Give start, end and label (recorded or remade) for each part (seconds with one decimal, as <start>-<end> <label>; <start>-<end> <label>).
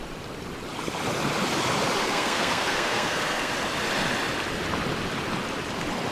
0.0-2.0 recorded; 2.0-3.5 remade; 3.5-6.1 recorded